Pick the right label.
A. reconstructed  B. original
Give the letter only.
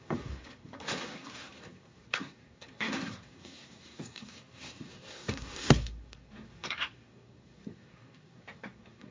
A